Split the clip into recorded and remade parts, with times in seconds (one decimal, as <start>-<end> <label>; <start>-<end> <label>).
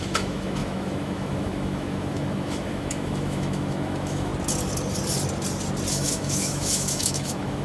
0.0-4.3 remade; 4.3-5.9 recorded; 5.9-7.6 remade